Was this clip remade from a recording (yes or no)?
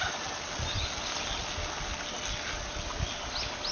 no